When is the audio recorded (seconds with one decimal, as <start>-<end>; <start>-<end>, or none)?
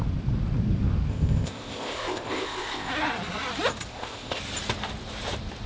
0.0-1.1; 2.9-3.9; 4.4-5.7